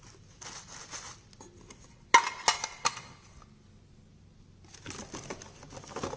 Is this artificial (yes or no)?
no